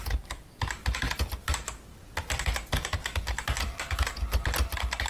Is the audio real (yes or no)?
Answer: yes